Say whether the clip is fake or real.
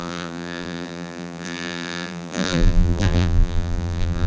fake